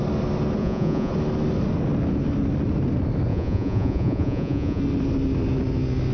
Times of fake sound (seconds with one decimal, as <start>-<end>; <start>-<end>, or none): 0.6-1.1; 3.3-4.8